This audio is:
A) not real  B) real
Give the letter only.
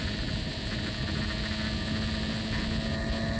B